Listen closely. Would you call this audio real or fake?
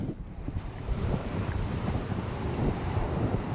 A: fake